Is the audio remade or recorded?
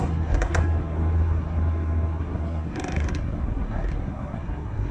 remade